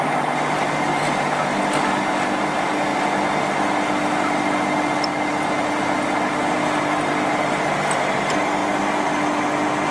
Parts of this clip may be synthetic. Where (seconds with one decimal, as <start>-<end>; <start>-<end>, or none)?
none